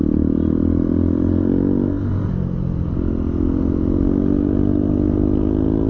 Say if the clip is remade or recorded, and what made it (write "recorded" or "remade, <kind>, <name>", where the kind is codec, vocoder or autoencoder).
recorded